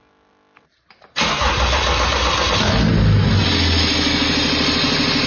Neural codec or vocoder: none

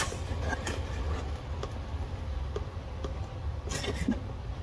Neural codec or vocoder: none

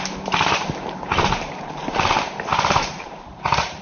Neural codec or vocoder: vocoder, BigVGAN v2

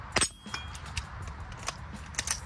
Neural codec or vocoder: none